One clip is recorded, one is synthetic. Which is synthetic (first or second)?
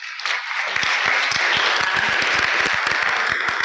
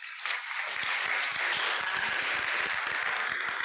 second